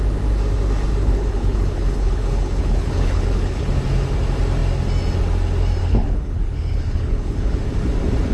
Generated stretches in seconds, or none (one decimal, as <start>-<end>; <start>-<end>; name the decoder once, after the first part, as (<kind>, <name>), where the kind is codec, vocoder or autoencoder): 1.0-3.7 (codec, HILCodec); 5.8-7.6